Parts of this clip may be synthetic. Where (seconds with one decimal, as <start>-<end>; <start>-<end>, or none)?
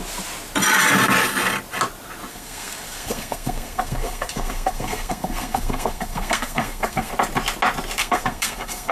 2.3-7.1; 8.0-8.9